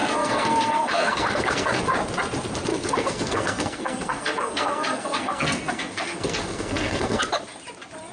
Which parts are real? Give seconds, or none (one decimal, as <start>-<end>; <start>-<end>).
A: 1.8-2.7; 7.3-8.1